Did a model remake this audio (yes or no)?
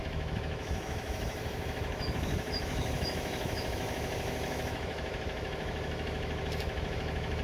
yes